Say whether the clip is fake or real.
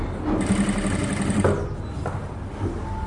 real